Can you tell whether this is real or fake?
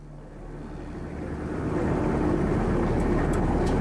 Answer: real